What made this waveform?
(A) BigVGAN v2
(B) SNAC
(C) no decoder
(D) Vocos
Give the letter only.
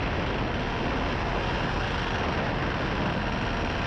C